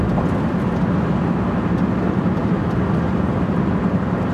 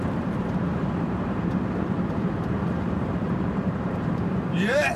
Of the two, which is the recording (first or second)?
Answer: first